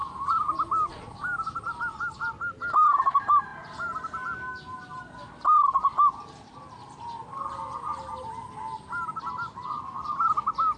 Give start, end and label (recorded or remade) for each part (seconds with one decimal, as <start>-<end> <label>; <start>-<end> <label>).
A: 0.0-10.8 recorded